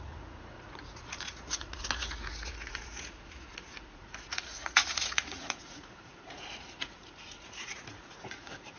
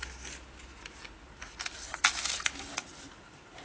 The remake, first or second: first